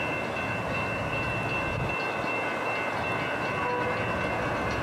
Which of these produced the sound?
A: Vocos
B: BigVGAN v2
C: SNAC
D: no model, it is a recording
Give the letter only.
D